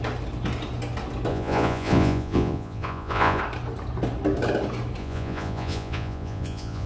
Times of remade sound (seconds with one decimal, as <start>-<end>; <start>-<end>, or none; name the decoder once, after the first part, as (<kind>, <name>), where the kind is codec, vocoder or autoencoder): 1.3-3.4 (vocoder, Vocos); 5.0-6.9